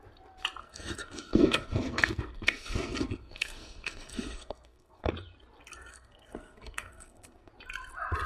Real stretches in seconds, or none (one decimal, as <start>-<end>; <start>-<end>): 0.0-0.6; 5.1-5.9; 7.5-8.3